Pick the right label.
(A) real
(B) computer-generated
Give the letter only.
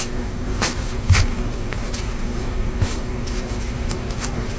B